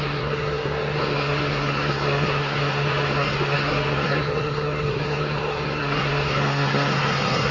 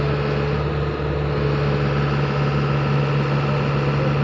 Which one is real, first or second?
second